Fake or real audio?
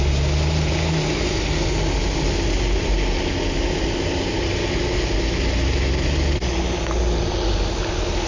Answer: real